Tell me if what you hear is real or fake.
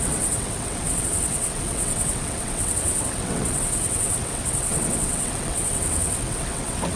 fake